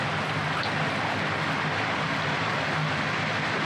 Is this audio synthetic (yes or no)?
no